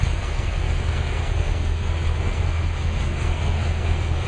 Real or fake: fake